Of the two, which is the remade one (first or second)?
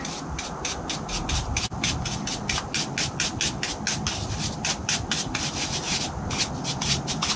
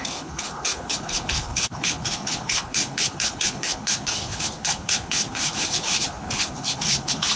second